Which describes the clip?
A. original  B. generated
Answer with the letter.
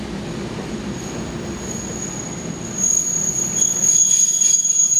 A